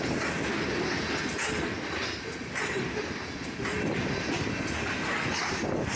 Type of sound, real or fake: real